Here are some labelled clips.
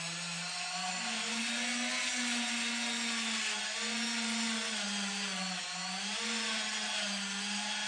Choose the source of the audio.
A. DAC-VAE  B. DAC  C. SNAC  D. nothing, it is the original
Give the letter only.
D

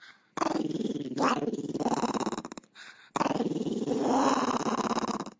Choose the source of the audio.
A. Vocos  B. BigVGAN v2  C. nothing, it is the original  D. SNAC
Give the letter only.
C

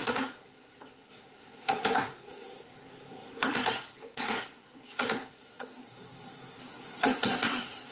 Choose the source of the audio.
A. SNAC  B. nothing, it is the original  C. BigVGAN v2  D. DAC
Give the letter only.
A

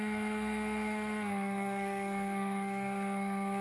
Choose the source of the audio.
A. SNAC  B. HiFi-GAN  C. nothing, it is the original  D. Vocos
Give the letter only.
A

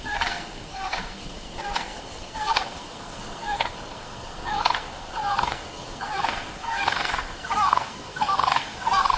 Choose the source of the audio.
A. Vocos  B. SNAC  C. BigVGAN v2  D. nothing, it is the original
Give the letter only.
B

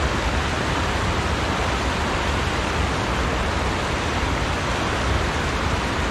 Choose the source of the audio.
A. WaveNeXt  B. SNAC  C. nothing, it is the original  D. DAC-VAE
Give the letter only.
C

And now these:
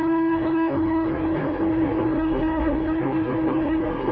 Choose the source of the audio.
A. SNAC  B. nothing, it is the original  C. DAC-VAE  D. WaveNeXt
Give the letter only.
A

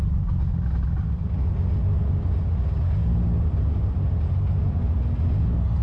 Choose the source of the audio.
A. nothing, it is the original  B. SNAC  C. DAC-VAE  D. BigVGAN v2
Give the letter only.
A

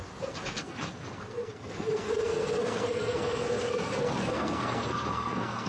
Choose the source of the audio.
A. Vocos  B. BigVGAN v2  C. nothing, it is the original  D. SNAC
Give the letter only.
D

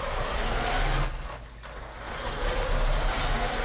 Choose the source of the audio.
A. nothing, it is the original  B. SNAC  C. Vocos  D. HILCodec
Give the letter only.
A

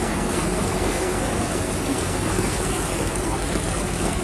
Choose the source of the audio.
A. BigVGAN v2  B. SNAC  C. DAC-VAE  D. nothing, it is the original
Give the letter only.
B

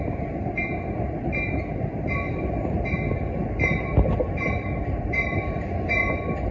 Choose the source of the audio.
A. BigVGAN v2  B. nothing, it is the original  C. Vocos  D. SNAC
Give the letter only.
B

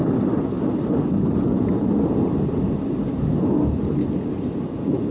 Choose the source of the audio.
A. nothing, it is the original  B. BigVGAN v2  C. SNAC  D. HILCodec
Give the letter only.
A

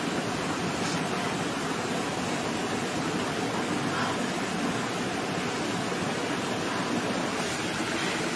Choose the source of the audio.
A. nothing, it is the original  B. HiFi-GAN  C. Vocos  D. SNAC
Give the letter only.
A